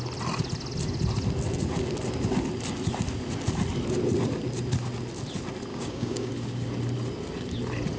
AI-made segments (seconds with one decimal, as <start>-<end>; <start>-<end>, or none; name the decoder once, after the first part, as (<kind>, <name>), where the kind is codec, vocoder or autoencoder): 5.7-6.3 (codec, DAC)